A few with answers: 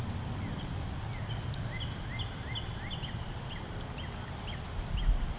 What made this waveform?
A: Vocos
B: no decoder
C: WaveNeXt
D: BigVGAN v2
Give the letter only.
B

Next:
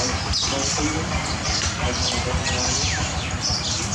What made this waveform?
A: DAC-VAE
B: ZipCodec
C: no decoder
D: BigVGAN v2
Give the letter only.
C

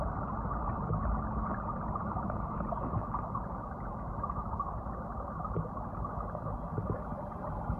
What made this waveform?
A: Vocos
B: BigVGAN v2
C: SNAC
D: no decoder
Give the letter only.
D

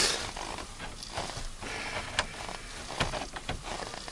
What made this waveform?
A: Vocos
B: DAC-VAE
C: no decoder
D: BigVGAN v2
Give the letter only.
C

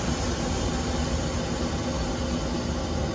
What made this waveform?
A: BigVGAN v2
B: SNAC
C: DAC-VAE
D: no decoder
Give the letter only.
D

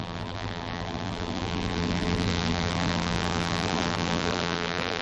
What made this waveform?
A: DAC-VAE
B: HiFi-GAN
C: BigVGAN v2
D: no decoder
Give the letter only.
C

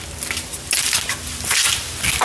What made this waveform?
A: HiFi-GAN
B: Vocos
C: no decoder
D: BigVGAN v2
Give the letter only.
C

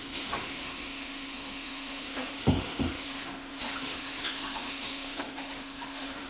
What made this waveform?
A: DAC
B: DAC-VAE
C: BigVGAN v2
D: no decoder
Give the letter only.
B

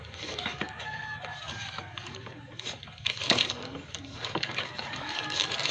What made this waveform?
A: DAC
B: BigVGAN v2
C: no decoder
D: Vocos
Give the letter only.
A